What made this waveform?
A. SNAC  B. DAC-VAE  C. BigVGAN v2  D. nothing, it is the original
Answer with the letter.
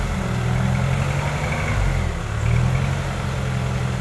D